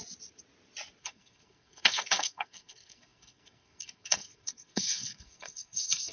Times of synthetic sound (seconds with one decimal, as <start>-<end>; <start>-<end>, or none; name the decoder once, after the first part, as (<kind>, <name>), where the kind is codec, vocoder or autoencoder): 1.0-6.1 (codec, SNAC)